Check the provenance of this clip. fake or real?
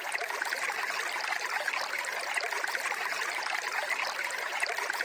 real